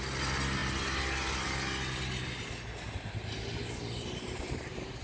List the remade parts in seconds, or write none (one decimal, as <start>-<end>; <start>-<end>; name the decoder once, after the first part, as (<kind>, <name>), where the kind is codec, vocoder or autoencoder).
none

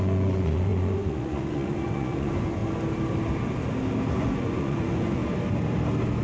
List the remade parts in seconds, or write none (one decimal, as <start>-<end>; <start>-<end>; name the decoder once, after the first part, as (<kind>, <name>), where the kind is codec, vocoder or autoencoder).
0.0-2.6 (vocoder, Vocos); 4.1-5.2

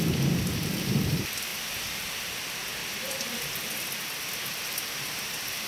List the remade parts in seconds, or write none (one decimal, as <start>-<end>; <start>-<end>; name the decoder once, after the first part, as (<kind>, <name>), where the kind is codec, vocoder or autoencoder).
0.0-2.8 (vocoder, BigVGAN v2); 4.6-5.7

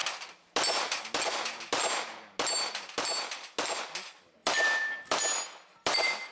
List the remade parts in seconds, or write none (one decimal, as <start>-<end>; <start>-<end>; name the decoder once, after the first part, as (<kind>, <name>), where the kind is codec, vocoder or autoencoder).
4.4-6.3 (vocoder, BigVGAN v2)